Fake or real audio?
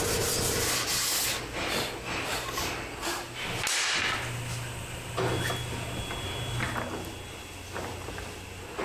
real